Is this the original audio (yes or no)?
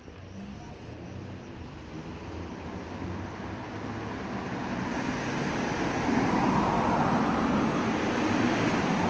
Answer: yes